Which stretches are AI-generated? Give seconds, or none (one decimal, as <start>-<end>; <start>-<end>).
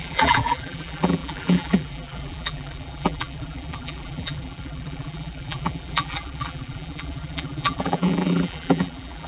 0.0-9.3